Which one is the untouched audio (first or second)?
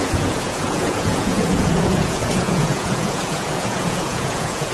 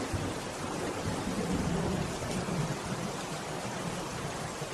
second